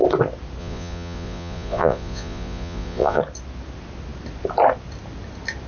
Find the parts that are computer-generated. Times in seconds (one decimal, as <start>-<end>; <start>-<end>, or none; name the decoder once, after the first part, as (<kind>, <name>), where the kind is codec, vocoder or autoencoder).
0.6-3.2 (vocoder, Vocos)